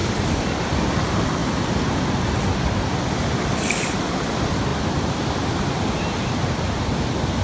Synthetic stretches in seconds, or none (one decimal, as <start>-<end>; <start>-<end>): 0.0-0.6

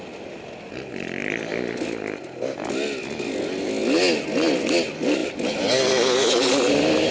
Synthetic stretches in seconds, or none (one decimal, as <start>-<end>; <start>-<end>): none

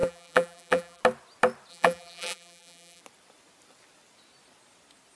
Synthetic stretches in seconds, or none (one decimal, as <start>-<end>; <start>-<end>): 0.0-1.0; 1.7-3.0

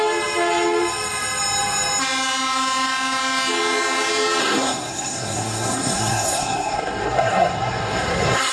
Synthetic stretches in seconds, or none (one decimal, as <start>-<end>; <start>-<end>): 4.4-8.5

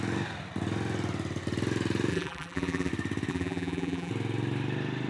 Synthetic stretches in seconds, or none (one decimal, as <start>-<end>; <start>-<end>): 2.1-2.9; 3.3-4.1